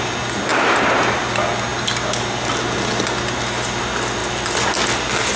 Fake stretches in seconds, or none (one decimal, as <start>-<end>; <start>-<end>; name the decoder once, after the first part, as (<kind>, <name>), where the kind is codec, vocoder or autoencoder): none